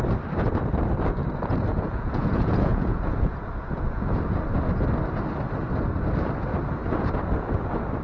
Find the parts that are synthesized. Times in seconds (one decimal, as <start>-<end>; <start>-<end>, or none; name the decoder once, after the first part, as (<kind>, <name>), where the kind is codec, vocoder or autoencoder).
1.7-4.4 (vocoder, Vocos)